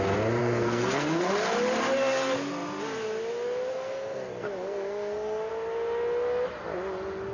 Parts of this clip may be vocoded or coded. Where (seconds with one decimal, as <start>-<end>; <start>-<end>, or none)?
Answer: 0.4-1.3; 3.7-5.5